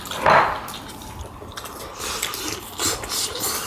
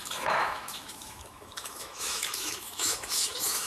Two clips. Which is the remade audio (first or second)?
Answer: second